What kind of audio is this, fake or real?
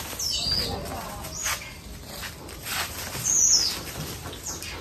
real